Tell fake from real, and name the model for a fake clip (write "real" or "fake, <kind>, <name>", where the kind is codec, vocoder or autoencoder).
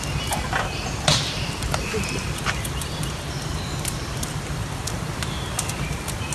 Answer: real